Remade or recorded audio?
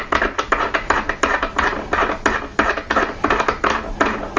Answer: recorded